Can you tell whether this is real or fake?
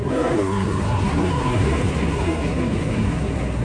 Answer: fake